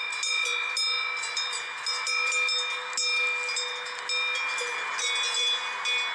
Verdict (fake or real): real